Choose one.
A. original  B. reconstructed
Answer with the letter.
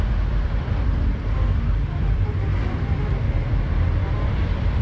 B